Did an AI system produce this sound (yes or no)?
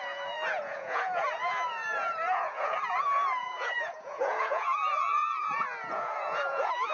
yes